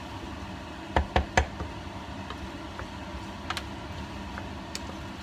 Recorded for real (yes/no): yes